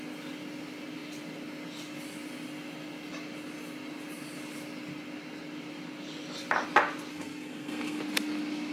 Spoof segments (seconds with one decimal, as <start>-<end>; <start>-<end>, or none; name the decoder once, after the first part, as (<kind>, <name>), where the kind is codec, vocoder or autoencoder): 7.1-8.0 (codec, SNAC)